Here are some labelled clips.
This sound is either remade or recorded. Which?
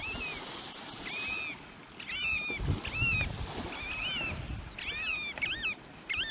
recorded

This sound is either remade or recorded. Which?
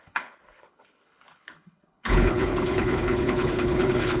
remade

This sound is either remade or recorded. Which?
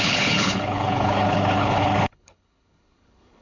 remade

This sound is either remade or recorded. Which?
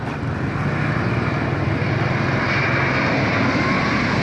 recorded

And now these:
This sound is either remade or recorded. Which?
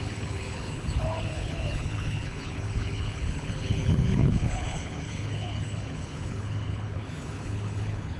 remade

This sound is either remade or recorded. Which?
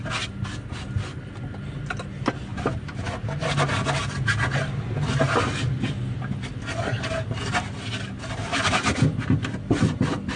recorded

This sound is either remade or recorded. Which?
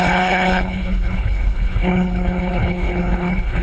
remade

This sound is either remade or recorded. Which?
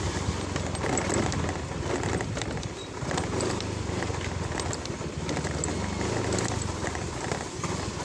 recorded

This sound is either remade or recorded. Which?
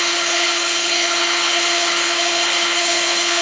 remade